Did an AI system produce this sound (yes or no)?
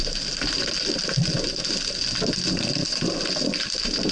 no